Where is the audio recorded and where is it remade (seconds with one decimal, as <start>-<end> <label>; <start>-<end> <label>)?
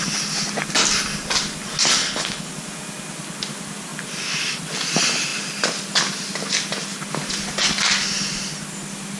0.0-2.0 recorded; 2.0-2.5 remade; 2.5-9.2 recorded